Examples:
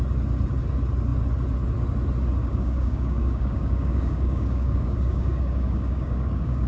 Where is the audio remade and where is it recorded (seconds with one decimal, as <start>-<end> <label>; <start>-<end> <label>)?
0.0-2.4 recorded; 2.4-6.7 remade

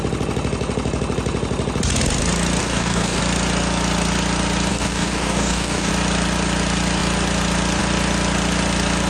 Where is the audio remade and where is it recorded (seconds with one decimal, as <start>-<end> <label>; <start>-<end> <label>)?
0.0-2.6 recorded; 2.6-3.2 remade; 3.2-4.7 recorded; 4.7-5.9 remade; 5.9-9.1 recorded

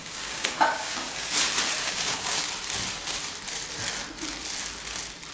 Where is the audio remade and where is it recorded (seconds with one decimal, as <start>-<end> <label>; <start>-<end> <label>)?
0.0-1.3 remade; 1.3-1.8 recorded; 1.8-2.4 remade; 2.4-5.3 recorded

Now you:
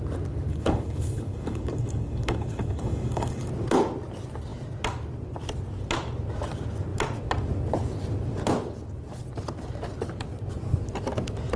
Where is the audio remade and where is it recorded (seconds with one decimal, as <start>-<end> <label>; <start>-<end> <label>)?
0.0-0.5 recorded; 0.5-3.5 remade; 3.5-11.6 recorded